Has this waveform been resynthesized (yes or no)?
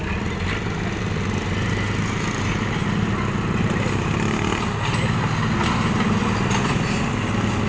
no